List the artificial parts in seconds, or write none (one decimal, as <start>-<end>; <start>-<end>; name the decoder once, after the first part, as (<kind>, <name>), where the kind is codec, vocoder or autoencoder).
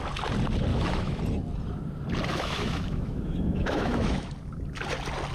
0.7-1.2 (autoencoder, DAC-VAE); 2.3-4.3